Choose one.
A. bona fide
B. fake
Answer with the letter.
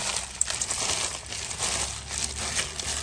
A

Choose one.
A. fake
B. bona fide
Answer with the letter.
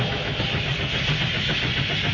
B